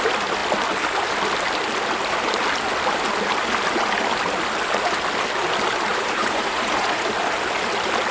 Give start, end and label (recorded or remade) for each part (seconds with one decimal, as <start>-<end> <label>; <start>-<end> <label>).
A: 0.0-5.9 recorded; 5.9-7.0 remade; 7.0-8.1 recorded